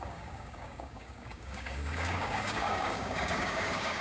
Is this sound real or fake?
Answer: fake